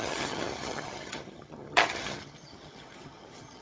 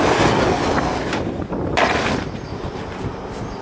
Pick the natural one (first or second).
second